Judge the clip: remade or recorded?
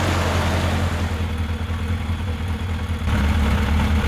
recorded